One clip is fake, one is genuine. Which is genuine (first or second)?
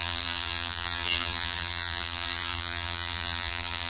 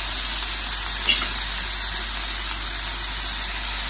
second